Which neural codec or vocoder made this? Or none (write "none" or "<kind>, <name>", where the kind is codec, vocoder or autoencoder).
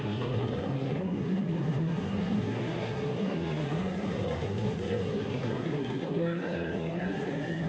codec, SNAC